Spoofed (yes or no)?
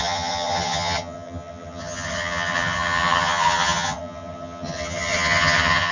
yes